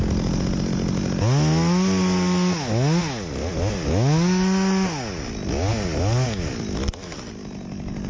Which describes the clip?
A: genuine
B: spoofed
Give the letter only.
A